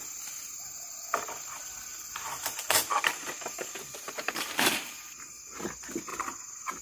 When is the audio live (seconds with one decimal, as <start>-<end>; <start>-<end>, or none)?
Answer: 0.0-1.9; 5.6-6.8